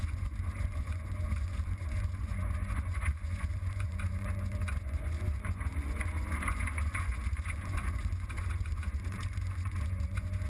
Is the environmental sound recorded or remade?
remade